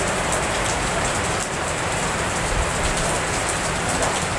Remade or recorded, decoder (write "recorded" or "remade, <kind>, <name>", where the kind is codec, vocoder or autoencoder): remade, vocoder, BigVGAN v2